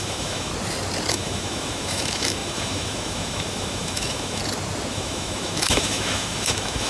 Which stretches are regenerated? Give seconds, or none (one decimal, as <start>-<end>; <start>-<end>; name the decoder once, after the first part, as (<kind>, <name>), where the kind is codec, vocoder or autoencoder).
0.0-0.5 (autoencoder, DAC-VAE); 1.1-4.4; 4.9-6.9